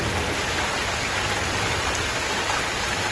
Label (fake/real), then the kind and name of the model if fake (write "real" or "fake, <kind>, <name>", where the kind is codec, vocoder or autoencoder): real